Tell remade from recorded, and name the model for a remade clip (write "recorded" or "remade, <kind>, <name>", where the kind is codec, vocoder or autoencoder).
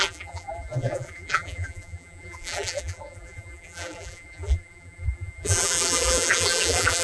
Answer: remade, vocoder, BigVGAN v2